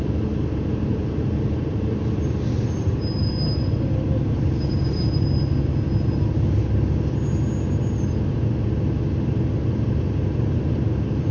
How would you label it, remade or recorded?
recorded